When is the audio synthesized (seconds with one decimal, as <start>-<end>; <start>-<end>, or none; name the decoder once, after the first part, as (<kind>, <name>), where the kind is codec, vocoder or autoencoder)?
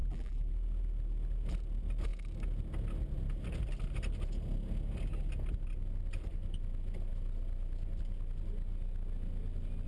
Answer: 0.0-0.5 (vocoder, BigVGAN v2)